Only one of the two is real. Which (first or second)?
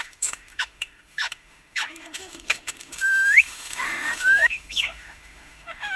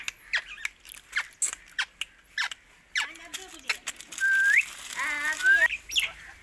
second